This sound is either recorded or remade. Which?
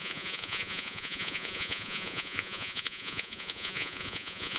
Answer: remade